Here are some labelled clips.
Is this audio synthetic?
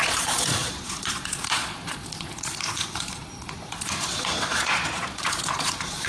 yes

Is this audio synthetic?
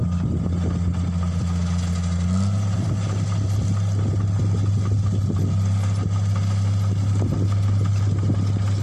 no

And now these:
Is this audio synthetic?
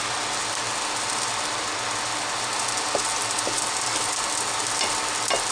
no